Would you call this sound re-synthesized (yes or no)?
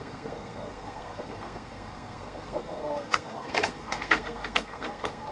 yes